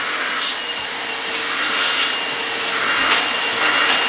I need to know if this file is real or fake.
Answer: real